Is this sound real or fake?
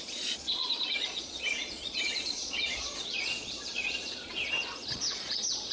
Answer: fake